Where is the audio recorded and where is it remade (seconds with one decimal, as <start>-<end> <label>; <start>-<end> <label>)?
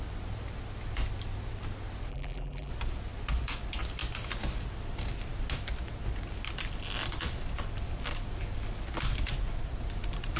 0.0-2.1 recorded; 2.1-2.7 remade; 2.7-10.4 recorded